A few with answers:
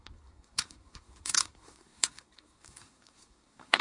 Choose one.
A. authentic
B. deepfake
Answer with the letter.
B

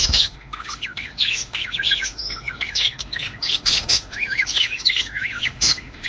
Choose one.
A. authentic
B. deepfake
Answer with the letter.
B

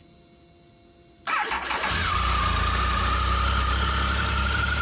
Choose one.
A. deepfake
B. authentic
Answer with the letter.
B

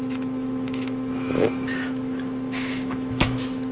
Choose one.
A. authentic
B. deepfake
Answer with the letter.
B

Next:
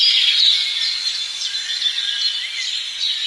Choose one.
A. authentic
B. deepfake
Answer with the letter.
A